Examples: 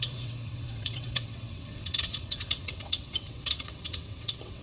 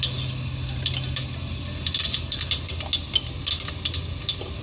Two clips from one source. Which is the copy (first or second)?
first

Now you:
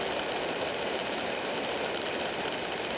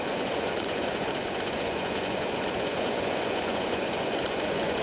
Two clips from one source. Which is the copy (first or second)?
second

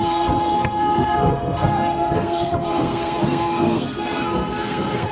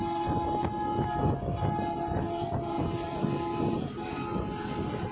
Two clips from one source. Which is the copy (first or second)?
first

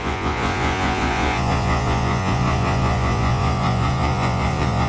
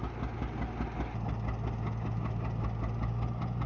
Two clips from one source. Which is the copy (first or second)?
first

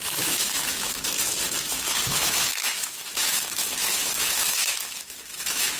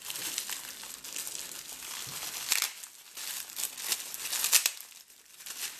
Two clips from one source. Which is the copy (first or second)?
first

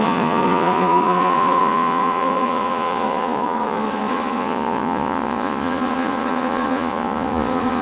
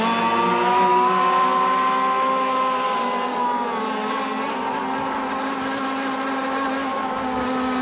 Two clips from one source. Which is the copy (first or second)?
first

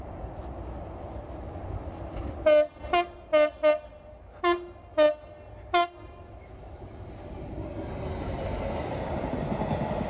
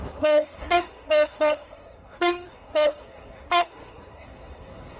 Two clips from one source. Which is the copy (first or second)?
second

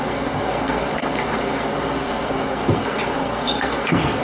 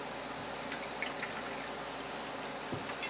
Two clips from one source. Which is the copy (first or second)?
first